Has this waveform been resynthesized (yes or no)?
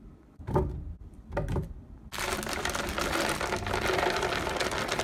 yes